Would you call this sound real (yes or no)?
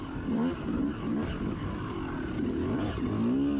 yes